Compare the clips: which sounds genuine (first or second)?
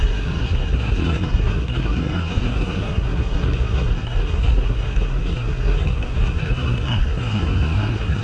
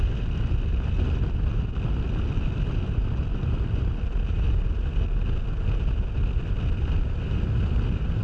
second